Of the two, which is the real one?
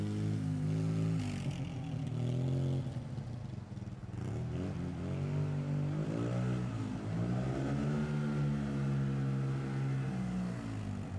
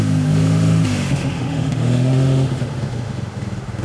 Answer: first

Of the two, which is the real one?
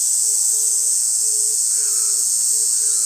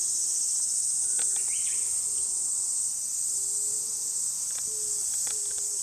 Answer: second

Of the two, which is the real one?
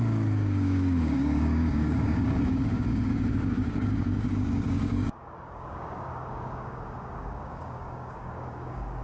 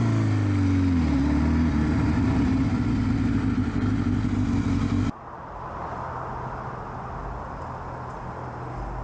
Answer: second